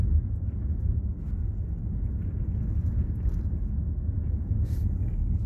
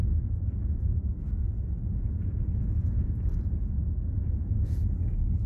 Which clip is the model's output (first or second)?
second